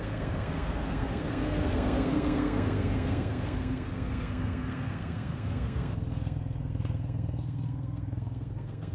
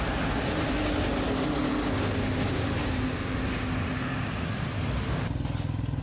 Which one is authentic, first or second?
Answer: second